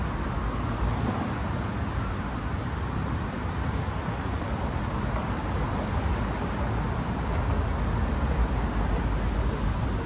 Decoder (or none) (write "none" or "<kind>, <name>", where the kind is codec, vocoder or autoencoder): none